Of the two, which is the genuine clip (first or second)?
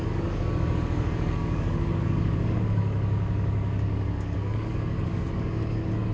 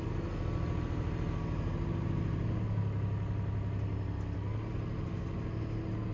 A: second